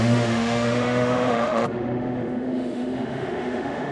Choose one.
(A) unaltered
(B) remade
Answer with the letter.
B